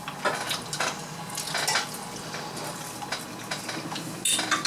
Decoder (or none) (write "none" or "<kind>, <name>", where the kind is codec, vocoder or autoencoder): none